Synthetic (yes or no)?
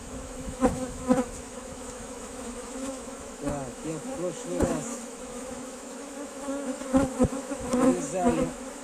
yes